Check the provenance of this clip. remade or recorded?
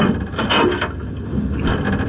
recorded